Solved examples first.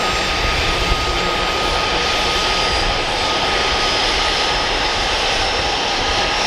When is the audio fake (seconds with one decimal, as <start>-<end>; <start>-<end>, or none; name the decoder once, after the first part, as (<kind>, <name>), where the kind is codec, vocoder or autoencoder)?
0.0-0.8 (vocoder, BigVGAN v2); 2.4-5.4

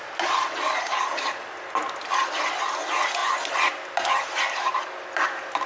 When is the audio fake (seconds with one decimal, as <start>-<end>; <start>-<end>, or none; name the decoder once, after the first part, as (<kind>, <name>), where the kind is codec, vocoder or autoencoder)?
none

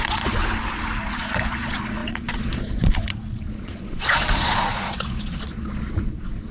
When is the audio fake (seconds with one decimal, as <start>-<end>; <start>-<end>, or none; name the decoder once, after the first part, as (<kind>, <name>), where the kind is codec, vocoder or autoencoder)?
0.0-0.4 (vocoder, Vocos); 1.0-6.5

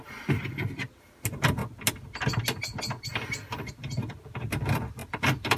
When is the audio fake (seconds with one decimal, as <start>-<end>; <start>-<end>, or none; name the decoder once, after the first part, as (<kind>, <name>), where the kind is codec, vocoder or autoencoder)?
5.0-5.6 (vocoder, BigVGAN v2)

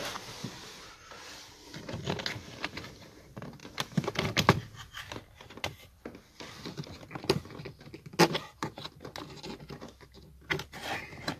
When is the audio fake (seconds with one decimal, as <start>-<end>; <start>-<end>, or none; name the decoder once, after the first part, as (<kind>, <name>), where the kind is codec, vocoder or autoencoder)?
none